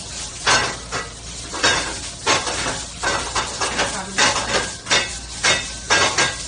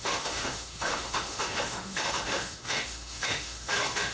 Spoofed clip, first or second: second